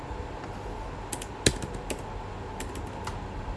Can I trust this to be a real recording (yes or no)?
yes